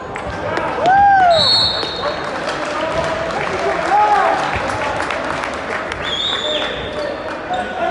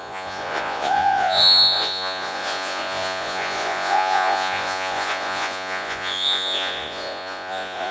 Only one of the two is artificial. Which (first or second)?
second